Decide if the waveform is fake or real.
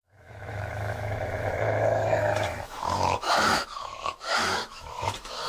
fake